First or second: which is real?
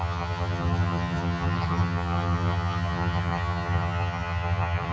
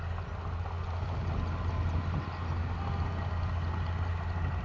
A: second